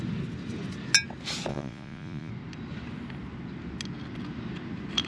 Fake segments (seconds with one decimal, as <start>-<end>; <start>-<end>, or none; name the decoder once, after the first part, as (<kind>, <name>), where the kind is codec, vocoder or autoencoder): 1.5-2.3 (vocoder, Vocos)